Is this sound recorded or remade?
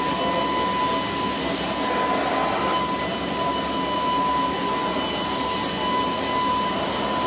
recorded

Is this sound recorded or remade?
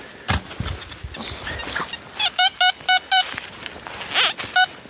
recorded